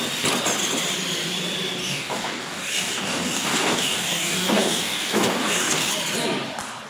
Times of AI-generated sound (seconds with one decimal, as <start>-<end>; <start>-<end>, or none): 1.8-5.9